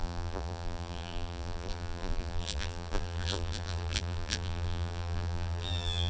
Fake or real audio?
fake